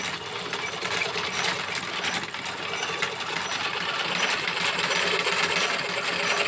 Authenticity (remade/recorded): recorded